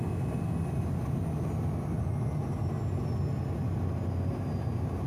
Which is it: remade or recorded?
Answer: recorded